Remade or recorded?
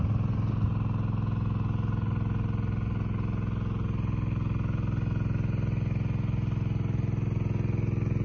recorded